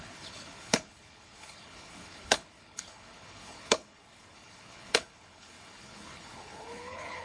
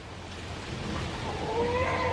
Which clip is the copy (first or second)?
first